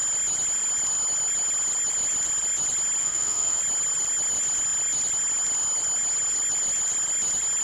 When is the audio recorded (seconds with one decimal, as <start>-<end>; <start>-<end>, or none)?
0.0-3.0; 3.6-7.6